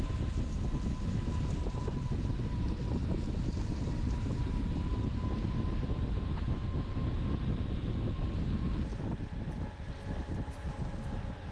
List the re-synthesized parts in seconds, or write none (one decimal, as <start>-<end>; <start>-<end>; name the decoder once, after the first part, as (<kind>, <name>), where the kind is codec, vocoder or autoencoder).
1.8-6.6 (vocoder, BigVGAN v2)